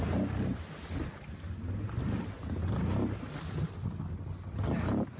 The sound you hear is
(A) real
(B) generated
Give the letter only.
A